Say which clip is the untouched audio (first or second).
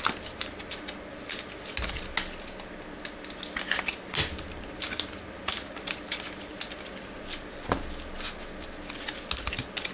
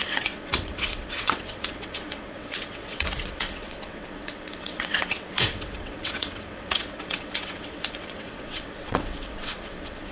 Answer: first